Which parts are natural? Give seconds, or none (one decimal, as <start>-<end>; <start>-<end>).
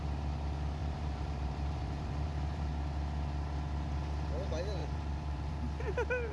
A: 0.0-0.8; 2.7-4.8; 5.5-6.3